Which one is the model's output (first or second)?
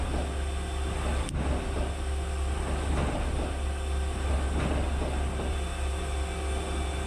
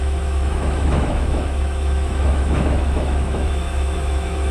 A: second